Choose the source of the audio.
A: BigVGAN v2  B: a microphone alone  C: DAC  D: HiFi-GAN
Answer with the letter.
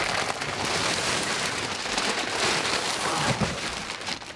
B